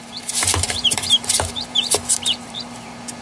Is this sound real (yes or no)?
no